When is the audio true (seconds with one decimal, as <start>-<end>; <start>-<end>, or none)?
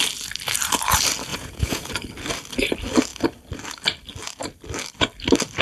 0.0-1.3; 1.9-5.6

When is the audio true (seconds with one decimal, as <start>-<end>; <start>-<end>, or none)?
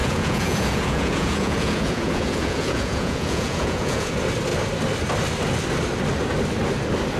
4.1-7.2